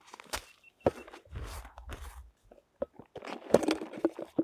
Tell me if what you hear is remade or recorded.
recorded